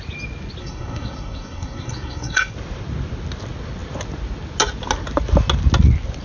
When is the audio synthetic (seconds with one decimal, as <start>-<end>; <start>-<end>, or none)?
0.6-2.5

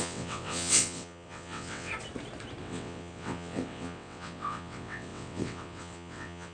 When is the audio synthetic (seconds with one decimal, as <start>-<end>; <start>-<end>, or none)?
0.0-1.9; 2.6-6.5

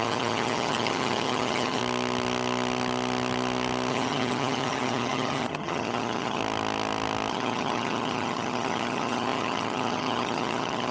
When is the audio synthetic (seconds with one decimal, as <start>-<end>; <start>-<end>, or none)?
0.0-1.8; 3.9-6.4; 7.3-10.9

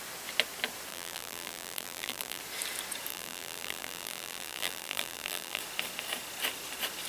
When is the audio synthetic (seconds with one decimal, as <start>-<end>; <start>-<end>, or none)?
0.9-2.4; 3.1-5.6